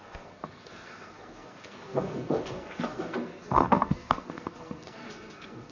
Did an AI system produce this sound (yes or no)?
yes